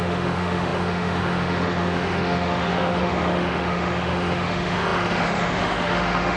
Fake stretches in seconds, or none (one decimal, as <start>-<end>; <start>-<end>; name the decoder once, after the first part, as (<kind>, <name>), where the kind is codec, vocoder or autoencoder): 0.0-6.4 (autoencoder, DAC-VAE)